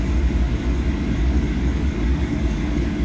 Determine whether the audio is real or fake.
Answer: fake